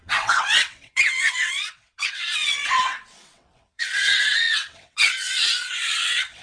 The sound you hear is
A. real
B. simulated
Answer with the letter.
B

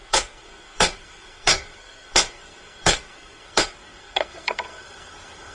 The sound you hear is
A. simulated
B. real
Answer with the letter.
A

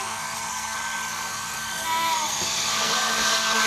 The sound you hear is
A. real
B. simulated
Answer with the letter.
B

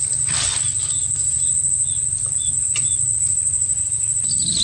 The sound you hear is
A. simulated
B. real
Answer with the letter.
B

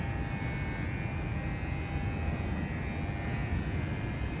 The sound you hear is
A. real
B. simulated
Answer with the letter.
A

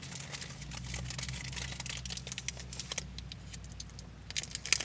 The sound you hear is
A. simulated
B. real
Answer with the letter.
B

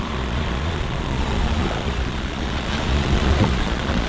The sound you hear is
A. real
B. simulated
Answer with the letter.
B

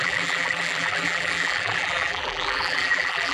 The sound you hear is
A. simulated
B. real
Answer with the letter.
A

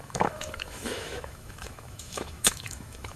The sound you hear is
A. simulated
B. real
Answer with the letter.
A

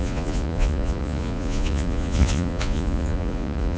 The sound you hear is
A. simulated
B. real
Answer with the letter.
A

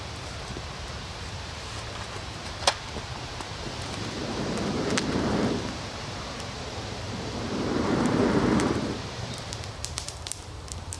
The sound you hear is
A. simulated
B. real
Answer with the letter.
A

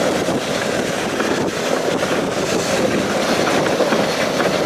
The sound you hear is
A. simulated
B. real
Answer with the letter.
B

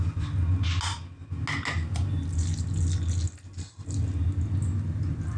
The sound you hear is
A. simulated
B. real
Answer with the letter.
B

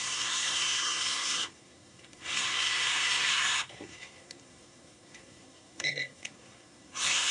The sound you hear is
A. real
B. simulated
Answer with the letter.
B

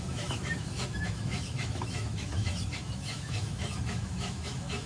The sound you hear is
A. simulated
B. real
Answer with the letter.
A